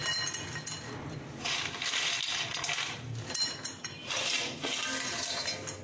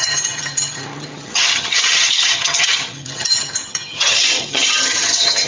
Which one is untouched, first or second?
first